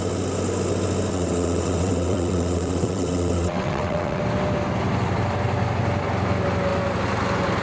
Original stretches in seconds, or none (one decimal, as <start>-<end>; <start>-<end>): 0.0-1.1; 4.2-7.6